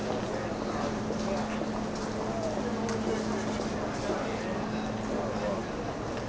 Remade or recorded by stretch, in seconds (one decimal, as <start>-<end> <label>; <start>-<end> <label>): 0.0-6.3 recorded